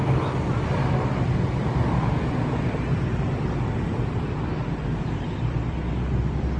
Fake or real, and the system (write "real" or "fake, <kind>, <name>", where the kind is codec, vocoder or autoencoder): fake, vocoder, BigVGAN v2